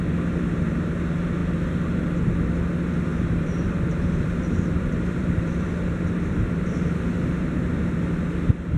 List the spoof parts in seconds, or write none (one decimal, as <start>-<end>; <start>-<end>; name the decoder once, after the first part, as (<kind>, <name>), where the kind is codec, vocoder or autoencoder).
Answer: 1.4-2.0 (vocoder, BigVGAN v2); 3.1-7.9